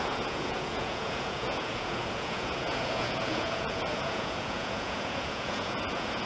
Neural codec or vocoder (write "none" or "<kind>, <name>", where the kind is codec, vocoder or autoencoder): vocoder, Vocos